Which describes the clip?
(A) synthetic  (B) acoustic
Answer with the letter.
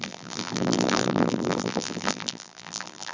A